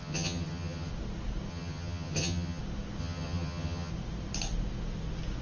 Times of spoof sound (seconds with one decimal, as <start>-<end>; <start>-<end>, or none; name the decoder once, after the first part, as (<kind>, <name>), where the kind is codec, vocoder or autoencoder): 0.0-0.9 (vocoder, HiFi-GAN); 1.5-2.6; 3.0-3.9